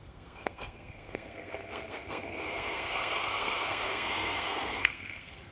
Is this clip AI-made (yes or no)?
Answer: yes